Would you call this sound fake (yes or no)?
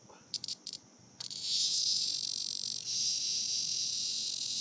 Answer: yes